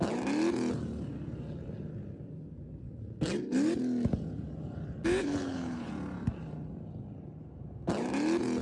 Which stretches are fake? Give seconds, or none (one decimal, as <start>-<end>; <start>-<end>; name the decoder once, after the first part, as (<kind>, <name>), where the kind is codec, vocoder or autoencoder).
5.2-5.9 (codec, HILCodec)